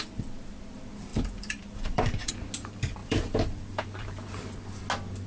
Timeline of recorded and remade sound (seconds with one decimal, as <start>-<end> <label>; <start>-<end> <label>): 0.0-1.1 recorded; 1.1-2.3 remade; 2.3-3.0 recorded; 3.0-4.4 remade; 4.4-5.3 recorded